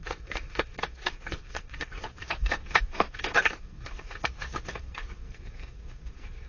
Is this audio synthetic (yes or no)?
yes